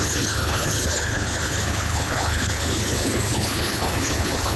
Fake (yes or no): yes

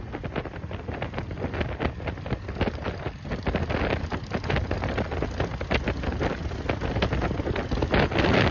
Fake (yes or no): no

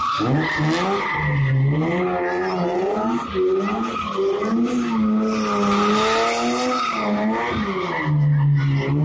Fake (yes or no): no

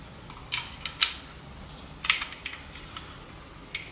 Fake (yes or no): no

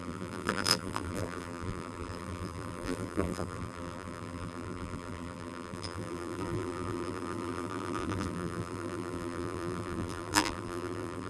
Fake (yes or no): yes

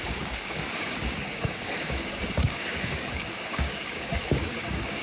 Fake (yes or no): yes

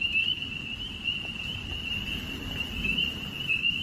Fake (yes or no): yes